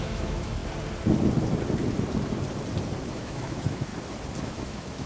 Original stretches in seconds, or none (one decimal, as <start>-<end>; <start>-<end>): 0.6-3.0; 3.9-4.4